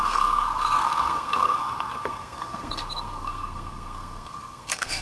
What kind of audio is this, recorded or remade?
remade